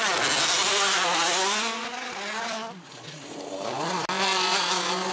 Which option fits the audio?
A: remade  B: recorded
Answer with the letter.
B